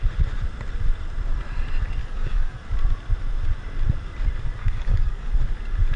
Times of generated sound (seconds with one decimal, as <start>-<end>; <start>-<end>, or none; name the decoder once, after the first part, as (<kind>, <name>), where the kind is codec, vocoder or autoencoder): 2.0-2.6 (codec, DAC); 4.6-5.3